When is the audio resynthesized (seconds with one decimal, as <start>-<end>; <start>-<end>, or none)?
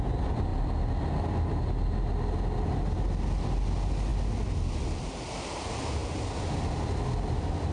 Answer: none